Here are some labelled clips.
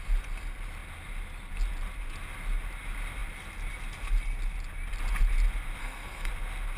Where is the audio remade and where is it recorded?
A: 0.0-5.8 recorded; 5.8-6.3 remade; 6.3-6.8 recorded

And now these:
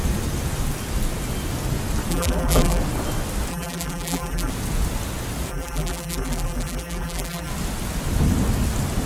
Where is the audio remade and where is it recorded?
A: 0.0-2.1 recorded; 2.1-2.8 remade; 2.8-3.5 recorded; 3.5-4.5 remade; 4.5-5.5 recorded; 5.5-7.5 remade; 7.5-9.1 recorded

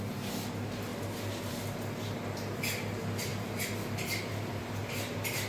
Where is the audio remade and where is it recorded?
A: 0.0-5.5 recorded

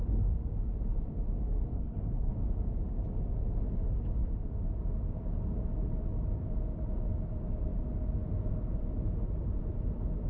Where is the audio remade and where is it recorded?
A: 0.0-1.7 recorded; 1.7-2.3 remade; 2.3-10.3 recorded

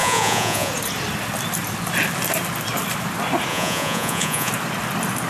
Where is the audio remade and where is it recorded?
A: 0.0-0.7 remade; 0.7-3.5 recorded; 3.5-4.5 remade; 4.5-5.3 recorded

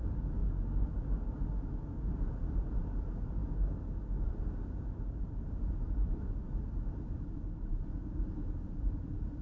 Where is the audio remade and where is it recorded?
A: 0.0-0.4 remade; 0.4-2.3 recorded; 2.3-3.4 remade; 3.4-4.3 recorded; 4.3-9.4 remade

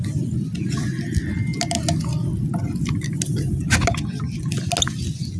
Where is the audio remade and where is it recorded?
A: 0.0-5.4 recorded